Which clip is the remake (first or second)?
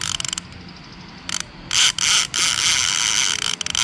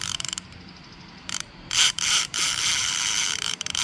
second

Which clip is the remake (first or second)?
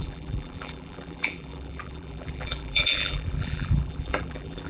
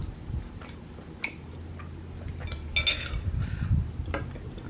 first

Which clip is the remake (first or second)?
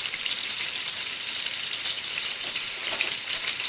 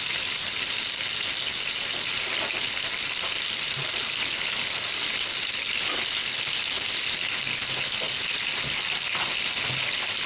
first